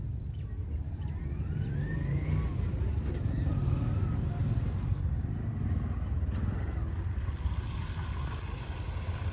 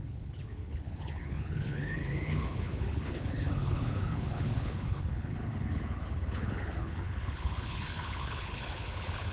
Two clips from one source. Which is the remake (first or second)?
second